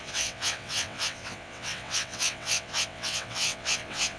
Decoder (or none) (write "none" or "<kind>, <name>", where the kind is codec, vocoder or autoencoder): vocoder, WaveNeXt